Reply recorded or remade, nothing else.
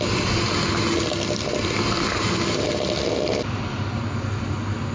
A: recorded